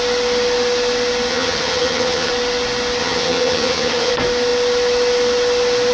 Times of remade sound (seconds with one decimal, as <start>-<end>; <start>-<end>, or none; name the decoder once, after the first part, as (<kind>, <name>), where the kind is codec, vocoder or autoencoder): 1.3-2.3 (vocoder, HiFi-GAN); 3.0-4.1

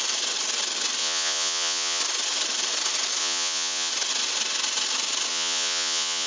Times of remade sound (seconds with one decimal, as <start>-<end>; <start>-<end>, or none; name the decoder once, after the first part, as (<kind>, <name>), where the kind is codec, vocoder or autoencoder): 1.0-2.0 (vocoder, Vocos); 3.2-3.9; 5.3-6.3

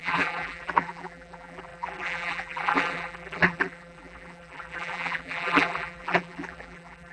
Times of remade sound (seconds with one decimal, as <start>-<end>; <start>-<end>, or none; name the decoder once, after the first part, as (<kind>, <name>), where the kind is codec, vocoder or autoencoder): 0.0-7.1 (vocoder, BigVGAN v2)

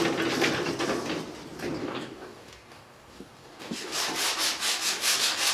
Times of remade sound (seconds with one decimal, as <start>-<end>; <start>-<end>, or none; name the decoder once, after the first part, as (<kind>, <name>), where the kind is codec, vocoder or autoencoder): 1.8-4.0 (codec, DAC); 4.7-5.5

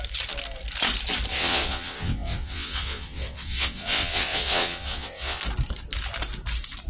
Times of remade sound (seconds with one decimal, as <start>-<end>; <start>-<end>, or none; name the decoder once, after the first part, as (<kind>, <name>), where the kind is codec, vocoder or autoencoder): 1.3-5.4 (vocoder, WaveNeXt)

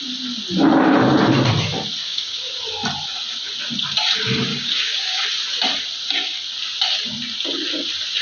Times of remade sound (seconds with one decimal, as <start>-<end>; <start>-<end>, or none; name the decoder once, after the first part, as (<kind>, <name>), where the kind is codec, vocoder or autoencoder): 2.0-2.5 (codec, DAC); 4.5-5.2